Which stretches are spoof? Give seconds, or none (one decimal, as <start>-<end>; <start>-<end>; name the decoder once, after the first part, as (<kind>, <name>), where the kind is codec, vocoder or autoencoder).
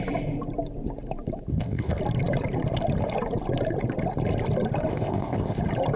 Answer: 1.5-2.0 (codec, ZipCodec); 4.9-5.6